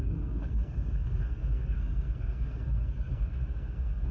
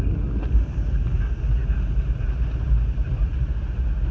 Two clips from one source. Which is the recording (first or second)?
second